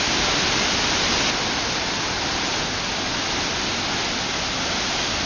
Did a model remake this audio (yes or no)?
no